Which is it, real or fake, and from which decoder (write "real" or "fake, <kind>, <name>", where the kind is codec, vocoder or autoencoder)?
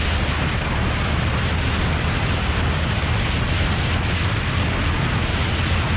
real